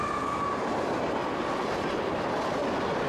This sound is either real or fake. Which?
real